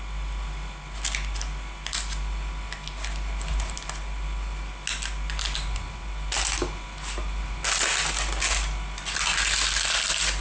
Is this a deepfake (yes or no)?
no